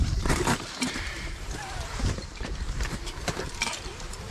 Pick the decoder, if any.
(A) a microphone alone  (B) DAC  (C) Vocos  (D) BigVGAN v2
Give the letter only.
D